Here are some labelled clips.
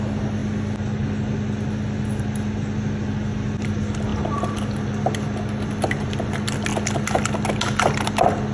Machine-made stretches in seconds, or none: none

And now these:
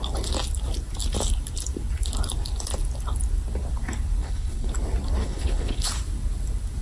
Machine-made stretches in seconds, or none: 4.2-4.7 (codec, HILCodec); 5.2-5.9